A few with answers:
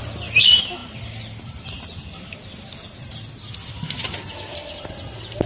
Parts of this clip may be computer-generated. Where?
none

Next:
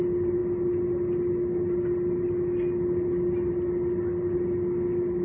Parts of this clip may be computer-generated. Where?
none